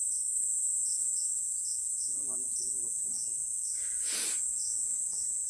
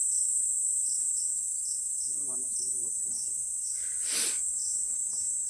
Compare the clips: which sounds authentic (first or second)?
second